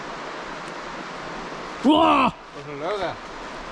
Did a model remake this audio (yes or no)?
no